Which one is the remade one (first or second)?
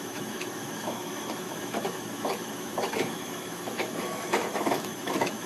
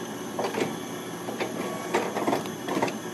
first